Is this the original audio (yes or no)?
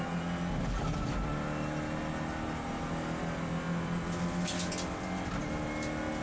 yes